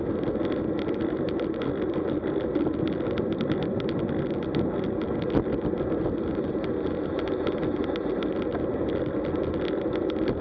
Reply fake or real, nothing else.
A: real